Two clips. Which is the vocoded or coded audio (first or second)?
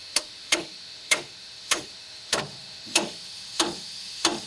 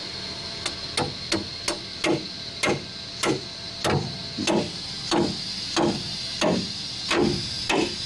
first